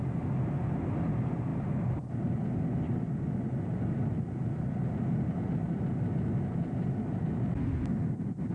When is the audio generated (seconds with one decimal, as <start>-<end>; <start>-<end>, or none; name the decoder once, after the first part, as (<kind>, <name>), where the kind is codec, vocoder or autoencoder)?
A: none